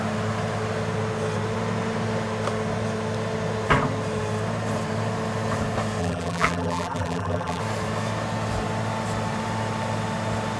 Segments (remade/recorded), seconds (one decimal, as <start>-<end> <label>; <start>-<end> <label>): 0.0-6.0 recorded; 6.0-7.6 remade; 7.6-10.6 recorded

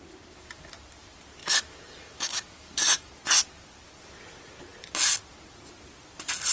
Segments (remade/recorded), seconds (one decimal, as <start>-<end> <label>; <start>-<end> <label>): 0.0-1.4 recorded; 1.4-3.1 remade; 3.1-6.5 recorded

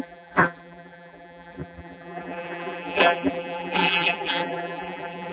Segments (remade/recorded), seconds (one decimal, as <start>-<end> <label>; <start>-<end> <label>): 0.0-5.3 remade